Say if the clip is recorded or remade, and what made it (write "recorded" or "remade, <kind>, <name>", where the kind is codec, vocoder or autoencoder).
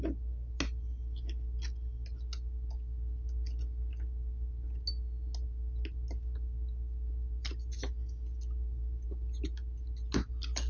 recorded